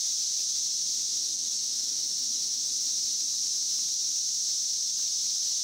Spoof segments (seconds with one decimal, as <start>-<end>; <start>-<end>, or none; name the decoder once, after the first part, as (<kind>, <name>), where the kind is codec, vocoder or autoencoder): 1.2-2.7 (autoencoder, DAC-VAE)